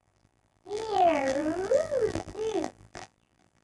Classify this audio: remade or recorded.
remade